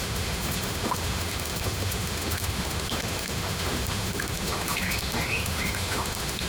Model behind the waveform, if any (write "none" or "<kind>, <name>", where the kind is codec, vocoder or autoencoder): autoencoder, DAC-VAE